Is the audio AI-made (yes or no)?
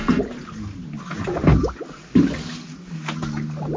no